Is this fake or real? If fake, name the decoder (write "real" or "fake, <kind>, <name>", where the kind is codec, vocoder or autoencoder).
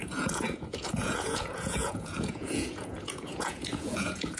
fake, vocoder, Vocos